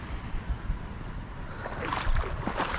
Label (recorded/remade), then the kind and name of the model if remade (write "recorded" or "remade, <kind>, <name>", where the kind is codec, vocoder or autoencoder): recorded